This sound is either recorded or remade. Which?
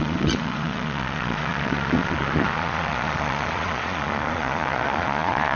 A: remade